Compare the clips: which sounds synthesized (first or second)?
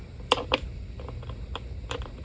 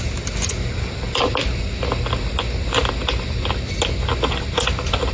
first